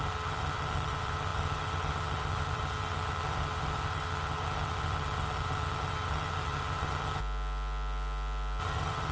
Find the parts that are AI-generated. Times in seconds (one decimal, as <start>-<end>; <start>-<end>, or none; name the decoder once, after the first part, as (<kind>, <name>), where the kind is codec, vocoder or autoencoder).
0.0-7.2 (vocoder, HiFi-GAN); 8.6-9.1